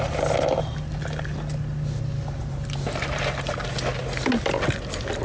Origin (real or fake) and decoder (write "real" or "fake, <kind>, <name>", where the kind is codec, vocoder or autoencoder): real